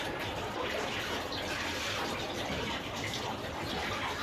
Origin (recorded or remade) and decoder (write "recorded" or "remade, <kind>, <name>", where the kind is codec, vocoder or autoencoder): recorded